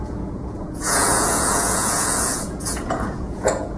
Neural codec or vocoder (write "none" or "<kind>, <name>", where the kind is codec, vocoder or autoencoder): vocoder, Vocos